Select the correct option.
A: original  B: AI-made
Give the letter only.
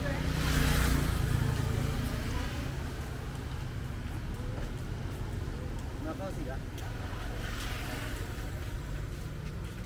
A